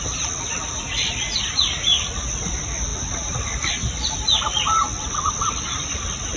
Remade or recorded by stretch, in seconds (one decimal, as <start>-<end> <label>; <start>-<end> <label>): 0.0-6.4 recorded